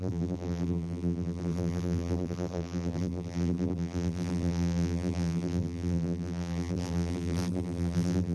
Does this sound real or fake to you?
fake